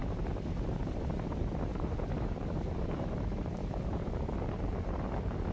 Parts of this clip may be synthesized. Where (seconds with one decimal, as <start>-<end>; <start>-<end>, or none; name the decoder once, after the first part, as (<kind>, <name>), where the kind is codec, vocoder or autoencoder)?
0.0-1.1 (vocoder, BigVGAN v2); 1.7-4.2